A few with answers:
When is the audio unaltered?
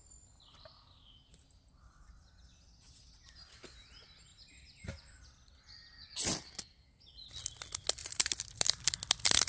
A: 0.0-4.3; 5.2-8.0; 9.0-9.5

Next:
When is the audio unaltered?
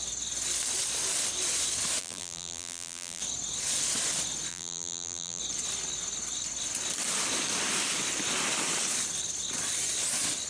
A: 0.0-2.0; 3.2-4.5; 5.4-10.5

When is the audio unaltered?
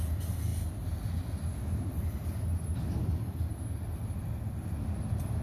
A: 0.0-3.0; 3.5-5.4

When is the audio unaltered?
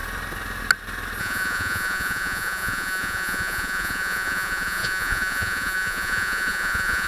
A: 0.0-1.2